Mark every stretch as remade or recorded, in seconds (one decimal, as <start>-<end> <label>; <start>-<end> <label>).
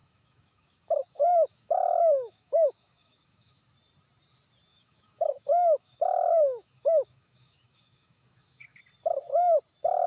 0.0-3.6 remade; 3.6-4.7 recorded; 4.7-8.8 remade; 8.8-10.1 recorded